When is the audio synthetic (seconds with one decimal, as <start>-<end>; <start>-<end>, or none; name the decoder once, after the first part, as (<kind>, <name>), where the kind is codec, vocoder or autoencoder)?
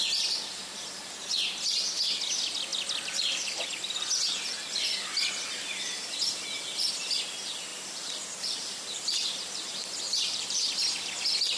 7.7-10.6 (vocoder, BigVGAN v2)